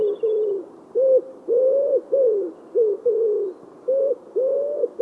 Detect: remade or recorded recorded